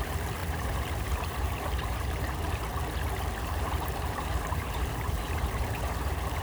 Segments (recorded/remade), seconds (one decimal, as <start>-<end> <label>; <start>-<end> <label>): 0.0-2.6 remade; 2.6-3.4 recorded; 3.4-6.4 remade